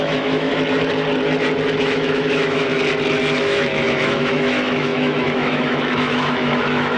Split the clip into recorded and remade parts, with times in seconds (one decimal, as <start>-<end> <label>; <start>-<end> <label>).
0.0-0.5 remade; 0.5-1.8 recorded; 1.8-2.7 remade; 2.7-3.4 recorded; 3.4-7.0 remade